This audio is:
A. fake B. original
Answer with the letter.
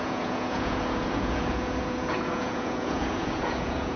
A